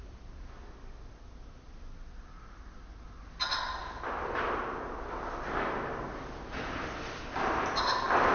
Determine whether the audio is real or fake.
real